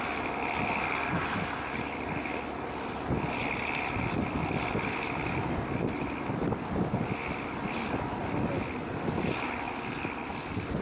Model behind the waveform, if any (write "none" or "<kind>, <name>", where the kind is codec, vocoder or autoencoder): none